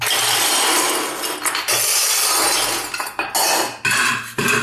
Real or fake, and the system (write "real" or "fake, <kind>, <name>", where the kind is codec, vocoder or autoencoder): real